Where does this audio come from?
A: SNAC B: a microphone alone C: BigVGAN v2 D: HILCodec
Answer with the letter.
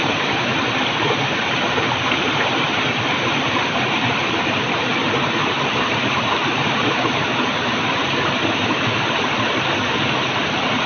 C